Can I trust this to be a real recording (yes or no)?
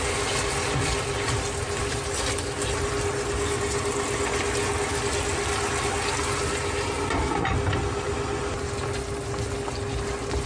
yes